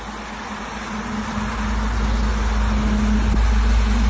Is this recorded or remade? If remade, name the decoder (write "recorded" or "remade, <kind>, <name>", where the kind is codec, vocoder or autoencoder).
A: recorded